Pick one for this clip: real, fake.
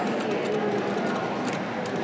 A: real